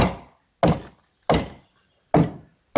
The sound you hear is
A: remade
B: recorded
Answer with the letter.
B